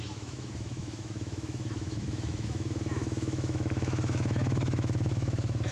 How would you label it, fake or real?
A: fake